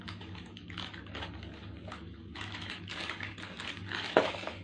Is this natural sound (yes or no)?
no